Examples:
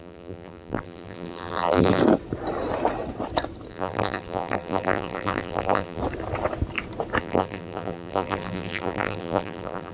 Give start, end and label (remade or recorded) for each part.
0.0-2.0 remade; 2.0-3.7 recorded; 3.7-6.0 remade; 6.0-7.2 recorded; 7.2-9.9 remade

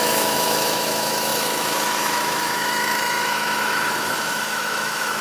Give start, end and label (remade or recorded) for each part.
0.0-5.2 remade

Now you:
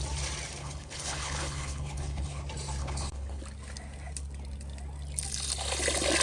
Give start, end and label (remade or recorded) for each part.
0.0-0.6 recorded; 0.6-2.4 remade; 2.4-2.8 recorded; 2.8-3.4 remade; 3.4-6.2 recorded